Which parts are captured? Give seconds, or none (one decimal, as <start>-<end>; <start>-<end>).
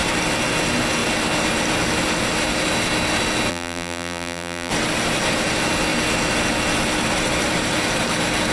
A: 0.0-3.5; 4.7-8.5